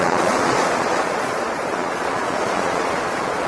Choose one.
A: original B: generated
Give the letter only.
B